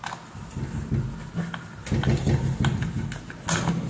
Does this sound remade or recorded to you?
recorded